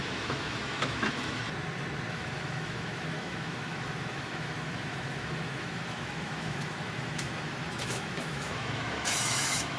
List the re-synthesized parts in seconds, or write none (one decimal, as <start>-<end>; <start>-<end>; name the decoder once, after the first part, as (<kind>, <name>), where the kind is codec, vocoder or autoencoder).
0.0-1.4 (autoencoder, DAC-VAE); 2.1-9.8